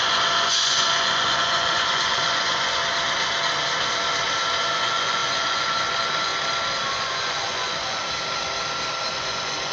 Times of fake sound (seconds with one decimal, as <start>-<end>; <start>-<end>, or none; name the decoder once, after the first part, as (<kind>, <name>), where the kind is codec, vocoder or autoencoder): 0.0-2.8 (vocoder, Vocos); 4.7-6.3; 6.8-8.0; 9.1-9.7